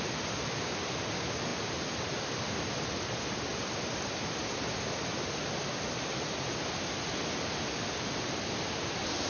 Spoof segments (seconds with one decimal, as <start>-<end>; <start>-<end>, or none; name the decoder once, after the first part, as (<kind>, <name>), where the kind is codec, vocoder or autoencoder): 1.5-2.2 (vocoder, BigVGAN v2)